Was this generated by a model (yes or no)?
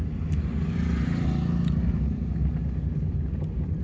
no